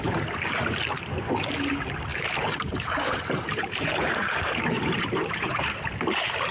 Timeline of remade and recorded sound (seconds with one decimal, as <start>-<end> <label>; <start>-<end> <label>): 0.0-2.1 recorded; 2.1-6.0 remade; 6.0-6.5 recorded